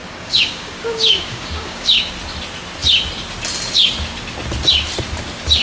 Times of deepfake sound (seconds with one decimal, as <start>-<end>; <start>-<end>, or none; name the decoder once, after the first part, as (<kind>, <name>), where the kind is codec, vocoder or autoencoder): 0.0-2.1 (codec, DAC)